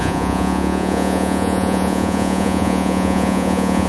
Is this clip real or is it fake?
fake